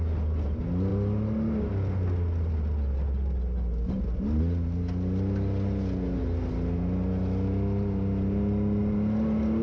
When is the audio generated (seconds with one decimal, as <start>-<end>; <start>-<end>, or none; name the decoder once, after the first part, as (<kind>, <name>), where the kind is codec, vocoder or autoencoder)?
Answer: none